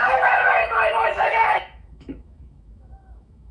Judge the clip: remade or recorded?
remade